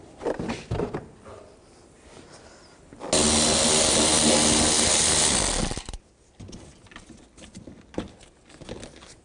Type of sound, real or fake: real